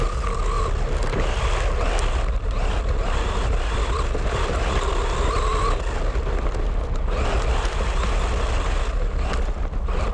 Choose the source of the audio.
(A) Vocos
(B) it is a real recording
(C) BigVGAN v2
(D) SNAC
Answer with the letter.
B